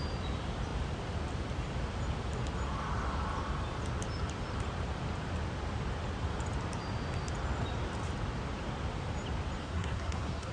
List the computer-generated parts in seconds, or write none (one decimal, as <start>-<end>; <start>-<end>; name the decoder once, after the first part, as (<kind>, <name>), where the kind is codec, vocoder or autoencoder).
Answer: 9.6-10.5 (codec, SNAC)